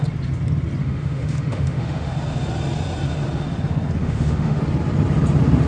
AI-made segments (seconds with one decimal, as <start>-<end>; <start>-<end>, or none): 0.8-2.1; 4.0-4.6